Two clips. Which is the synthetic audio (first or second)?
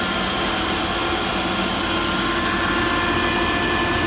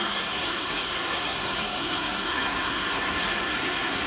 second